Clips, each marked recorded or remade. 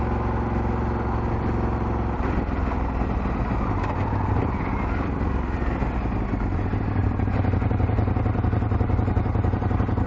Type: recorded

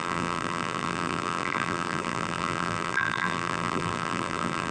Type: remade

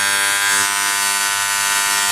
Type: recorded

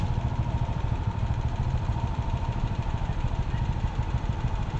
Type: remade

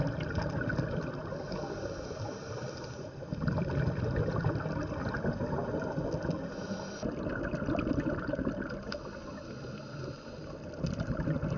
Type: recorded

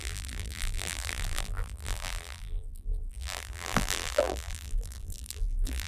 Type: remade